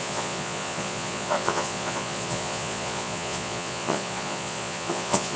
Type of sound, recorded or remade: remade